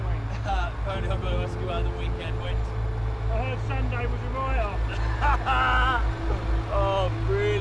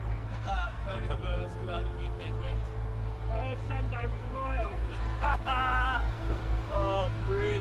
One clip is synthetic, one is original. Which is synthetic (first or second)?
second